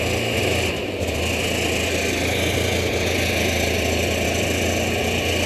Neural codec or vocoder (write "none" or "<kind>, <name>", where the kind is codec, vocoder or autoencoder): none